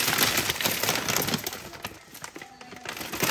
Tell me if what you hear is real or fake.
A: real